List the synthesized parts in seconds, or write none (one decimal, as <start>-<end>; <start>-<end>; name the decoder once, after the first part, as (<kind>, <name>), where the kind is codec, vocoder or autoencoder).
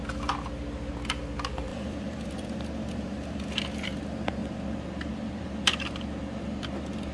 1.7-4.0 (vocoder, BigVGAN v2)